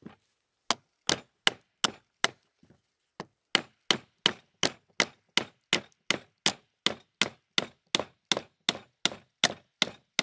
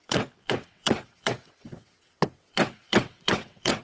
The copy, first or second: second